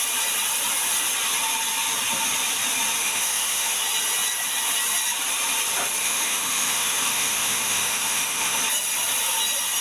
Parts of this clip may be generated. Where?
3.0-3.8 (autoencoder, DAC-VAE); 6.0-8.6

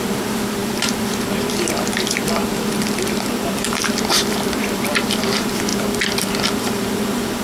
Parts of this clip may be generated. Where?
0.0-7.4 (vocoder, BigVGAN v2)

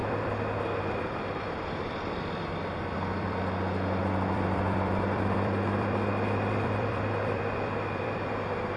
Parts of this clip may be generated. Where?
0.0-8.8 (vocoder, BigVGAN v2)

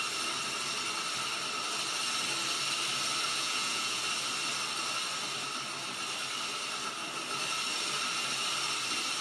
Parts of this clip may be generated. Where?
3.3-4.0 (vocoder, Vocos)